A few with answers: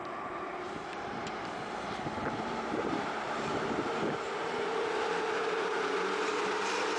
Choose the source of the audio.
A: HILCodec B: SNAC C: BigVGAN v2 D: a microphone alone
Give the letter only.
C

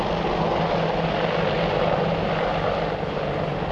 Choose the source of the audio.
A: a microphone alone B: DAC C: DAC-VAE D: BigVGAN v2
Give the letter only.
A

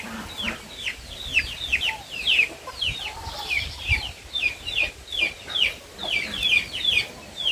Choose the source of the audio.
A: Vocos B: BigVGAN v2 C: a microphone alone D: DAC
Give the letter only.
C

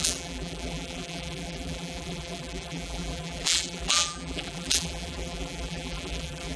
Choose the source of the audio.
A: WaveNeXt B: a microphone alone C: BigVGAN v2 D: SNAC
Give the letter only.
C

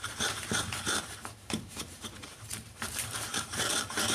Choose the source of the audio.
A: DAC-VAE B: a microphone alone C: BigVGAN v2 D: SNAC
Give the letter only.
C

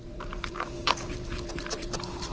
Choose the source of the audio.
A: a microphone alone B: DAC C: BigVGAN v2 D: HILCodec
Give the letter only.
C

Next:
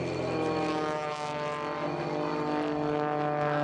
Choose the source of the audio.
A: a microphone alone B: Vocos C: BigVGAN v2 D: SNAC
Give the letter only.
A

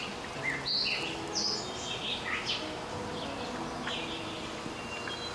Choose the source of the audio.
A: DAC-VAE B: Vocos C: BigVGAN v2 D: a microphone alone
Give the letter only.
D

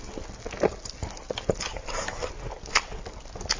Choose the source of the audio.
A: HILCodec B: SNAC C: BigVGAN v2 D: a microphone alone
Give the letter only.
D